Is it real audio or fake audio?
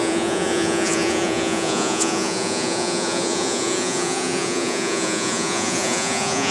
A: fake